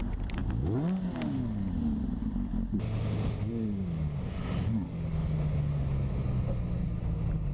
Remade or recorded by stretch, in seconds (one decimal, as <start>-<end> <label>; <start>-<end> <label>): 0.0-7.5 recorded